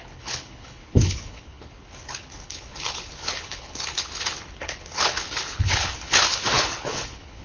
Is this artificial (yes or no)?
yes